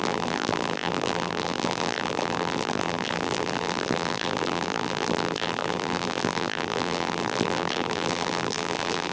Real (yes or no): no